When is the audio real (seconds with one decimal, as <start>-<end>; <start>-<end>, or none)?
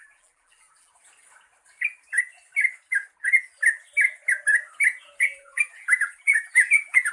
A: 0.9-5.2